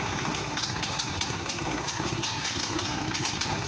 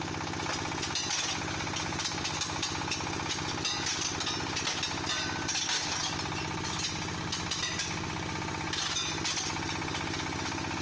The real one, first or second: second